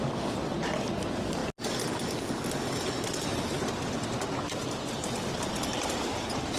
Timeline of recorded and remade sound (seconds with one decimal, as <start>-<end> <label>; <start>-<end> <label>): 0.0-6.6 recorded